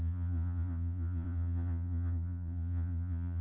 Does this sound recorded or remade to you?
remade